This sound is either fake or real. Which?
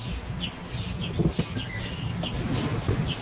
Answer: real